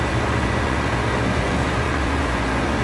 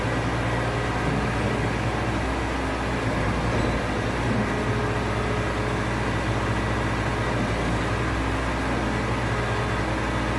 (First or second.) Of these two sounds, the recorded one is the second